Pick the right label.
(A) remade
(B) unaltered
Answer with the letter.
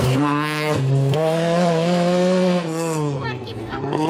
A